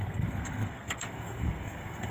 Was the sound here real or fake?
fake